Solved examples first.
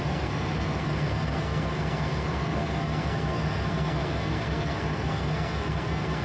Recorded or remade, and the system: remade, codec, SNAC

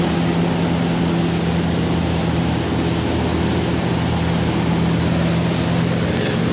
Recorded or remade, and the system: recorded